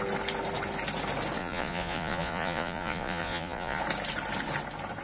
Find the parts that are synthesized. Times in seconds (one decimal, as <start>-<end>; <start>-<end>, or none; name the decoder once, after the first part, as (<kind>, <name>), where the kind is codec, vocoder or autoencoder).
1.4-3.8 (vocoder, Vocos)